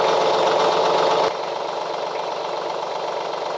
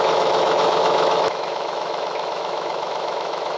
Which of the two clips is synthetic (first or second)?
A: second